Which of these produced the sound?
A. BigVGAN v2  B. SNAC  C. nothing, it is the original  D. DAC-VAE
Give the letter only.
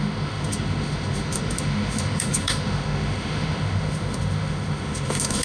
D